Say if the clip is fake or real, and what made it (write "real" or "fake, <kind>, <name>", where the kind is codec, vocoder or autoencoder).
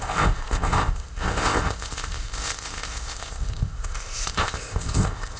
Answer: fake, codec, ZipCodec